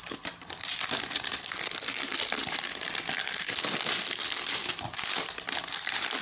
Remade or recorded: remade